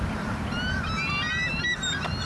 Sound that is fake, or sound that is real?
real